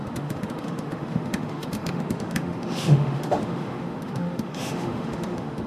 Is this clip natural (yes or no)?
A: no